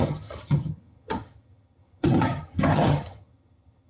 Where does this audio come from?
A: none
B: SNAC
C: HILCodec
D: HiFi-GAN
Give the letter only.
D